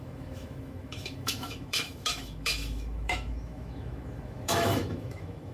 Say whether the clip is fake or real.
fake